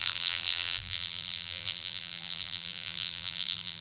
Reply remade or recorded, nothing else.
remade